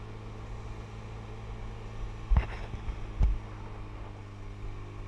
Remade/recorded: recorded